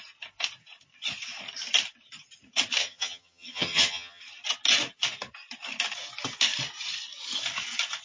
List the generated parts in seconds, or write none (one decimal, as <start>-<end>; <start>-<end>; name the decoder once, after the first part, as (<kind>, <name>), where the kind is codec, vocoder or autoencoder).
2.8-4.2 (vocoder, HiFi-GAN)